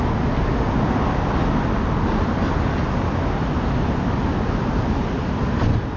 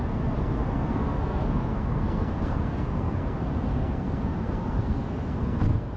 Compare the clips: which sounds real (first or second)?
first